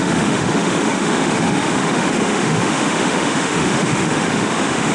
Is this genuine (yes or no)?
no